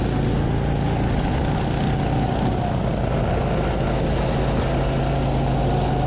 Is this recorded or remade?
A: recorded